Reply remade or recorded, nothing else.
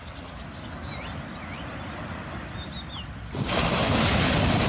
recorded